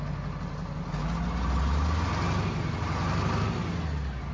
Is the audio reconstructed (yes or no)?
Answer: no